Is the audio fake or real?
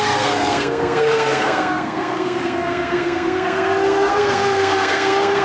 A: fake